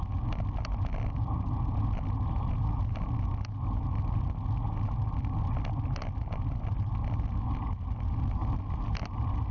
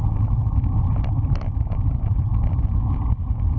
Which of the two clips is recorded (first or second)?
first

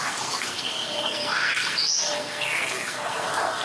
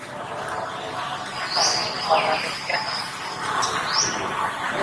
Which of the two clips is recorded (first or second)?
second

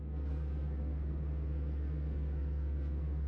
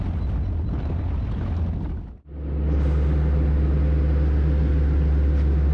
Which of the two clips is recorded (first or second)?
second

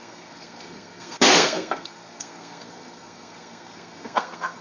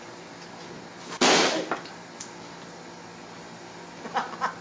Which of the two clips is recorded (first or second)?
second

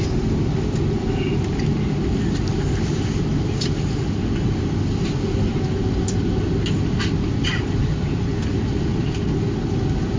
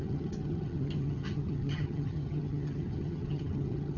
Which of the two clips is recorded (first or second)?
first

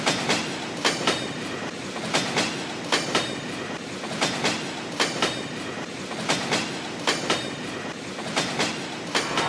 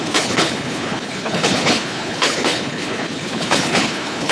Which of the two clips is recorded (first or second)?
first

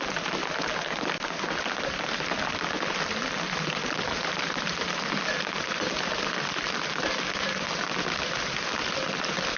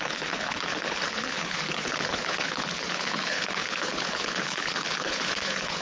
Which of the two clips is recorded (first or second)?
first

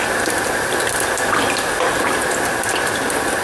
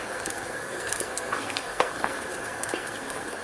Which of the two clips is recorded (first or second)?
first